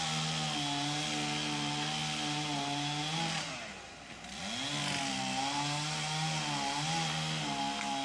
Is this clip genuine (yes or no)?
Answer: yes